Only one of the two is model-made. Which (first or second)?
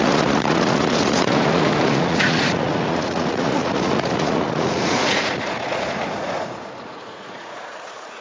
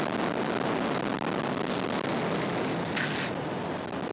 first